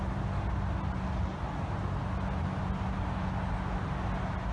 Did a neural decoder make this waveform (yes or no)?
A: no